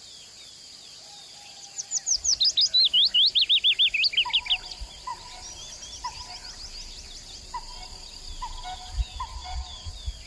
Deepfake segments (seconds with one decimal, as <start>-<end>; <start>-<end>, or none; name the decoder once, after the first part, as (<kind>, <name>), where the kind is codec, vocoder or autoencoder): 9.4-9.9 (vocoder, Vocos)